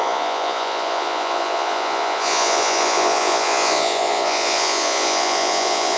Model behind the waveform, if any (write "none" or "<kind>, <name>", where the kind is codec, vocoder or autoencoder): vocoder, Vocos